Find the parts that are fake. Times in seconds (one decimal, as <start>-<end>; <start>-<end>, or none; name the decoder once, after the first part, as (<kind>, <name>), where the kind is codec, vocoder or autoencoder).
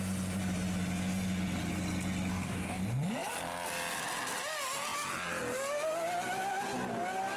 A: 2.3-2.8 (codec, DAC)